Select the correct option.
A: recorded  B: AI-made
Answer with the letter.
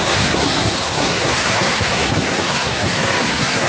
B